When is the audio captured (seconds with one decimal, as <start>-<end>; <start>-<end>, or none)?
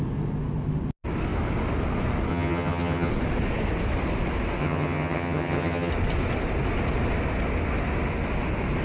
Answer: 0.0-2.3; 3.1-4.6; 5.9-8.8